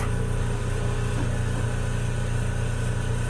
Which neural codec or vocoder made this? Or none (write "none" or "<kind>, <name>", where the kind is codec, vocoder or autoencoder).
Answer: none